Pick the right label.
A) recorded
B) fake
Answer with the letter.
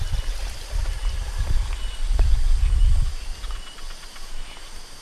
A